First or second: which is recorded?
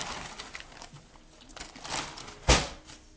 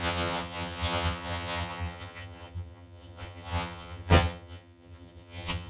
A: first